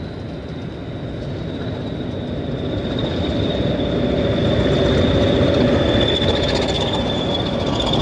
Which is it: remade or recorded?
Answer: recorded